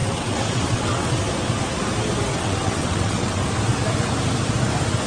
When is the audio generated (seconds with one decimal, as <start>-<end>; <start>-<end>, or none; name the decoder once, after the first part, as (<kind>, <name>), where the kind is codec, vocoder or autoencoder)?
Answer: 0.0-1.2 (vocoder, WaveNeXt); 2.3-3.4